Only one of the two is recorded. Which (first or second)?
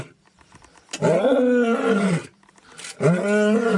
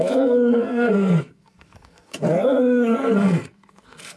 first